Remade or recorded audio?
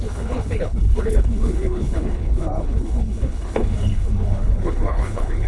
remade